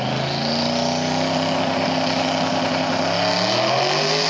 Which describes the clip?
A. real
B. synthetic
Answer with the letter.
A